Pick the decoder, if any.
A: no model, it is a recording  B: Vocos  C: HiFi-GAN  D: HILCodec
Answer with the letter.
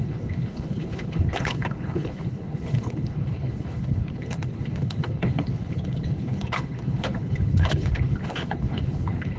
D